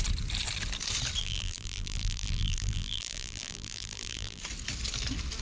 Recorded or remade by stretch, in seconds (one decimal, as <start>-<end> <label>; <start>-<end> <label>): 0.0-1.2 recorded; 1.2-4.4 remade; 4.4-5.4 recorded